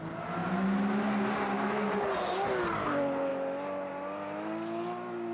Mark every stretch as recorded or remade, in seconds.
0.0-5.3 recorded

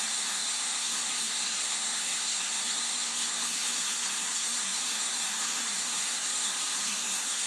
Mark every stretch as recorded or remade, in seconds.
0.0-7.5 remade

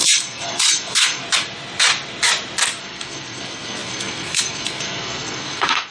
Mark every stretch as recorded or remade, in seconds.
0.0-1.2 remade; 1.2-2.8 recorded; 2.8-5.9 remade